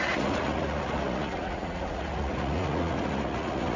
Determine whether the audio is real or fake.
fake